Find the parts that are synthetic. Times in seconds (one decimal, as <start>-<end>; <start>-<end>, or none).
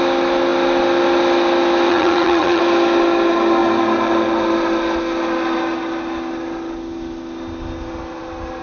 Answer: 1.9-2.6